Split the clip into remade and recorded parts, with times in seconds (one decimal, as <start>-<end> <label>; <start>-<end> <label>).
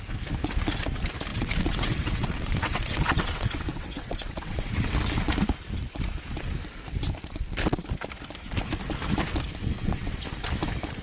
0.0-1.3 recorded; 1.3-4.9 remade; 4.9-9.6 recorded; 9.6-10.2 remade; 10.2-11.0 recorded